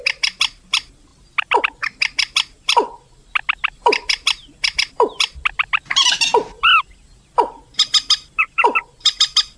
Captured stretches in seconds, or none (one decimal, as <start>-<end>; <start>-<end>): 0.0-1.1; 1.6-9.6